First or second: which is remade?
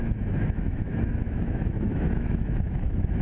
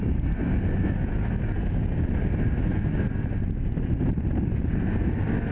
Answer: first